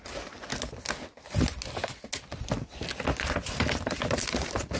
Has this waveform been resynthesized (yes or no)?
no